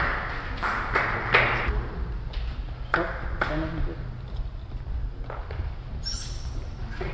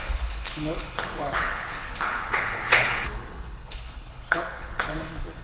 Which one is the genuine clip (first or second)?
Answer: first